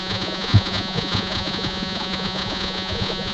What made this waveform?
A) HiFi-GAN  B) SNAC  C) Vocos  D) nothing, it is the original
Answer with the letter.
C